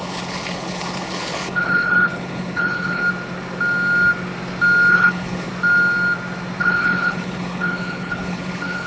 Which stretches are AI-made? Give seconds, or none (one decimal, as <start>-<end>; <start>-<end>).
0.0-3.0; 4.9-5.5; 6.6-8.9